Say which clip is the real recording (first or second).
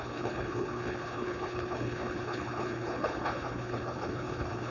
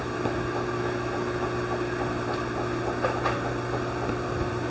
second